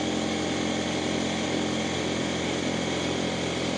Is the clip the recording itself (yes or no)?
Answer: yes